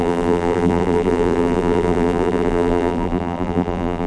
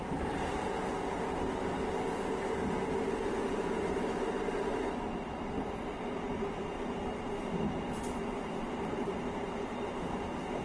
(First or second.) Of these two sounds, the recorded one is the second